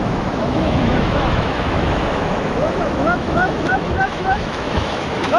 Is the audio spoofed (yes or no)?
yes